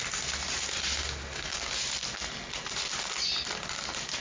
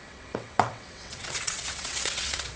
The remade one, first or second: second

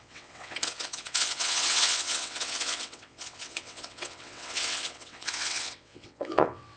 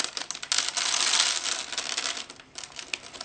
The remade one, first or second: first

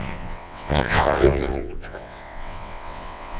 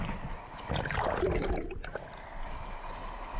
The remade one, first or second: first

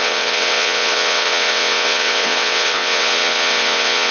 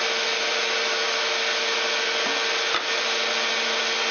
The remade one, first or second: first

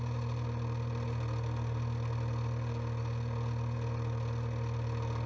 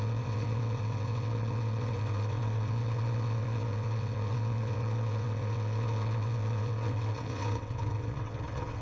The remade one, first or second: second